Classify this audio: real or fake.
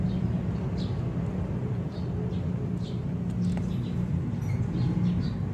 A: real